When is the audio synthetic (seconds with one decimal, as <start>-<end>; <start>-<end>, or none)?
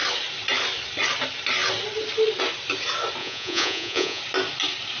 3.2-4.2